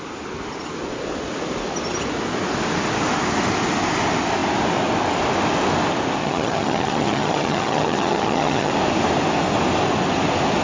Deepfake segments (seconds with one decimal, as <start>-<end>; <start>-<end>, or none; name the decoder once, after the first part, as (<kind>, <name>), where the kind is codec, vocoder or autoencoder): 6.2-8.7 (vocoder, HiFi-GAN)